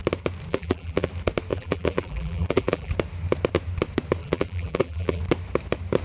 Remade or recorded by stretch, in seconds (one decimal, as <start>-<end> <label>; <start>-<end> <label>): 0.0-0.5 recorded; 0.5-1.1 remade; 1.1-1.5 recorded; 1.5-2.9 remade; 2.9-4.2 recorded; 4.2-5.2 remade; 5.2-6.0 recorded